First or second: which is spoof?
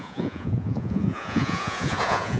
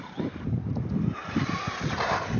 first